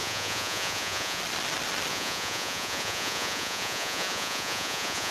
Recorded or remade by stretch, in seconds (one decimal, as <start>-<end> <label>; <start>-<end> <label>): 0.0-1.2 remade; 1.2-1.9 recorded; 1.9-5.1 remade